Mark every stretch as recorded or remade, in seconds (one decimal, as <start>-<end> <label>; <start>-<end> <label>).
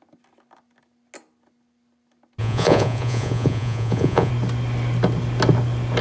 0.0-2.4 recorded; 2.4-4.3 remade; 4.3-6.0 recorded